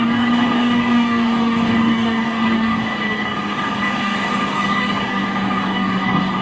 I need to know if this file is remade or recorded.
remade